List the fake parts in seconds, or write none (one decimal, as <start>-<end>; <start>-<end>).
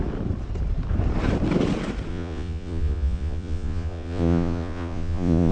2.1-5.5